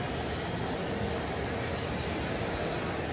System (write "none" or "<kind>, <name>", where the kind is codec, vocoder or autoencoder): none